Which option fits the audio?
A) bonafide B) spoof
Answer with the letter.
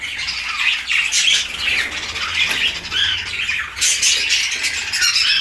A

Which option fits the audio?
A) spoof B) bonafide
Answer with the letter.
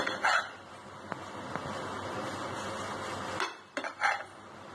B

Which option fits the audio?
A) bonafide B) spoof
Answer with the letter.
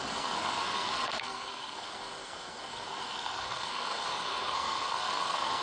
B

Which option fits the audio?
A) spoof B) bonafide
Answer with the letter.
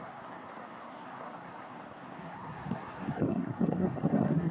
A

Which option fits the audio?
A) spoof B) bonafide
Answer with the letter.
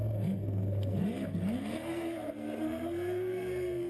A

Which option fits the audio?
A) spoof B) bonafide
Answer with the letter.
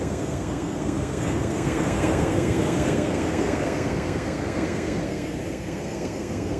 A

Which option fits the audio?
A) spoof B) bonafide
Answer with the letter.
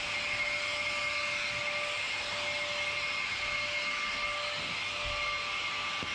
B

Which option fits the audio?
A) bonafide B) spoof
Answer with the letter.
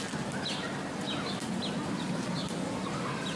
A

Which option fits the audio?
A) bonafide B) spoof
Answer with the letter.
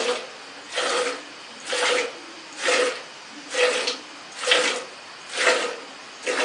A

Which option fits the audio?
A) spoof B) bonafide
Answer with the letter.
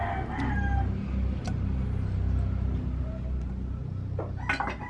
B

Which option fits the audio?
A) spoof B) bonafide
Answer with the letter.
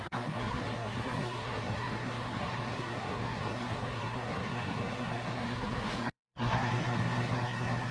A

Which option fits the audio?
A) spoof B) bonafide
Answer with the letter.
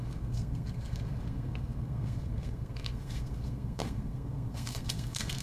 A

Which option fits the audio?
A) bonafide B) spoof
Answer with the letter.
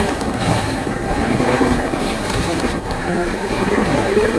B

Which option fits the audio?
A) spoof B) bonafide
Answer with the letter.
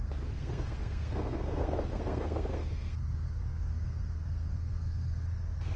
A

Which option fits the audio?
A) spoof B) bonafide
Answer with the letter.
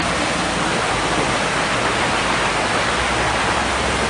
B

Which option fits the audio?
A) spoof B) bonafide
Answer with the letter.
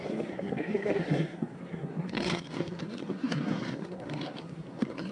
A